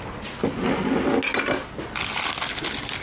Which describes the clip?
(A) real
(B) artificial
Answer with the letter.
A